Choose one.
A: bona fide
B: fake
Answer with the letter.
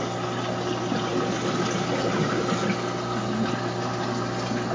A